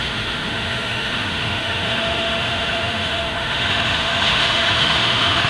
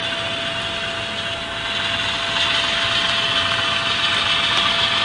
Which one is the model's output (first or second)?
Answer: first